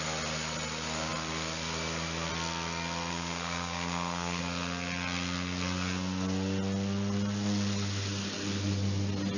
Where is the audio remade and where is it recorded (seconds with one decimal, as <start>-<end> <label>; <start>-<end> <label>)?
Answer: 0.0-3.1 recorded; 3.1-4.4 remade; 4.4-9.4 recorded

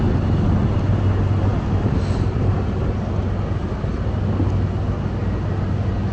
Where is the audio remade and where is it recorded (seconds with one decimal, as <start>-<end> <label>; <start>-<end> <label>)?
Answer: 0.0-6.1 recorded

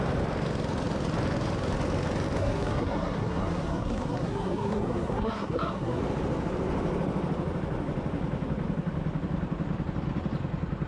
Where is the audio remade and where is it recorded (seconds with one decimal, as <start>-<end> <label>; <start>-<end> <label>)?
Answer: 0.0-2.4 recorded; 2.4-6.0 remade; 6.0-10.9 recorded

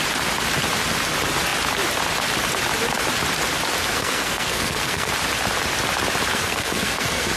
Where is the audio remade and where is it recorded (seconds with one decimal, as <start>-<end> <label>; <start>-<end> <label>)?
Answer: 0.0-3.9 recorded; 3.9-5.1 remade; 5.1-6.3 recorded; 6.3-7.4 remade

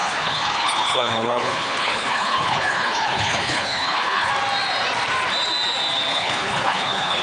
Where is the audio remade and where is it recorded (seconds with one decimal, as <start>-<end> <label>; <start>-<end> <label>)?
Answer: 0.0-4.3 remade; 4.3-6.1 recorded; 6.1-7.2 remade

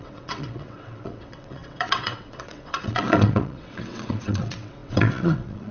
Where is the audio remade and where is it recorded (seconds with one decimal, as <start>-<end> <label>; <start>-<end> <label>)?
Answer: 0.0-5.7 remade

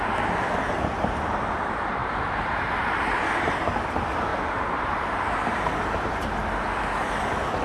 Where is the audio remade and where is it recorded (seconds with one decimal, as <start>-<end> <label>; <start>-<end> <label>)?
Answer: 0.0-2.0 recorded; 2.0-3.2 remade; 3.2-4.3 recorded; 4.3-6.4 remade; 6.4-7.6 recorded

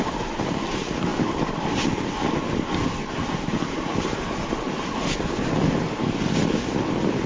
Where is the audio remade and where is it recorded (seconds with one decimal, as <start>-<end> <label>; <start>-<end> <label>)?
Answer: 0.0-7.3 recorded